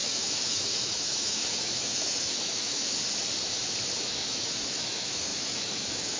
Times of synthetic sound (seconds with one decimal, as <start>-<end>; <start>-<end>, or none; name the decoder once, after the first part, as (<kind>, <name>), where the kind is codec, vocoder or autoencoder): 0.0-3.0 (autoencoder, DAC-VAE); 4.0-6.2